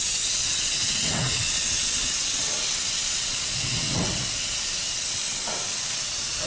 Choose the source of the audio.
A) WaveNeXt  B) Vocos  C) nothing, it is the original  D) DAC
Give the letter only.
A